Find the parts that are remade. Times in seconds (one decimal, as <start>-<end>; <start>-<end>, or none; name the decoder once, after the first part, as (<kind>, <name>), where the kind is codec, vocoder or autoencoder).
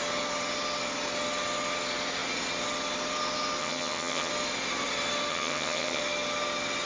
3.6-4.3 (vocoder, HiFi-GAN); 5.3-6.0